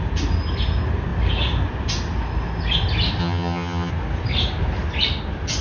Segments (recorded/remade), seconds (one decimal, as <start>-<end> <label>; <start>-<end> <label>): 0.0-3.2 recorded; 3.2-3.9 remade; 3.9-5.6 recorded